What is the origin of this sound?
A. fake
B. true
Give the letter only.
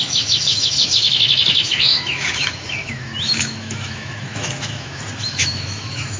A